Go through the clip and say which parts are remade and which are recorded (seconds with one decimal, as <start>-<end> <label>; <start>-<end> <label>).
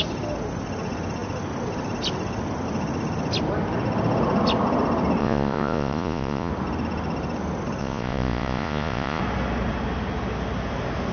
0.0-5.2 recorded; 5.2-6.5 remade; 6.5-7.8 recorded; 7.8-9.2 remade; 9.2-11.1 recorded